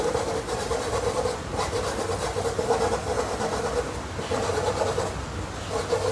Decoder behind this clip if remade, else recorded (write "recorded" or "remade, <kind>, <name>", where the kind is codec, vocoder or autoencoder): recorded